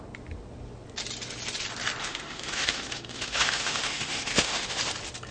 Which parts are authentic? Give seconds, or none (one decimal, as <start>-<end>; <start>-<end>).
0.0-2.0; 4.8-5.3